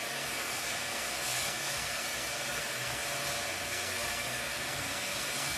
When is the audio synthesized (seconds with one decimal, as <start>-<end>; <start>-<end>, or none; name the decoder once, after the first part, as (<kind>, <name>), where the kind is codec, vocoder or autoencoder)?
0.0-3.0 (codec, SNAC); 3.5-5.6